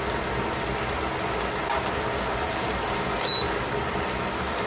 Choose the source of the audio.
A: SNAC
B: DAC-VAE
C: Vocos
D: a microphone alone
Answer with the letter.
D